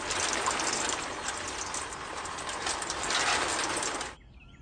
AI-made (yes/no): no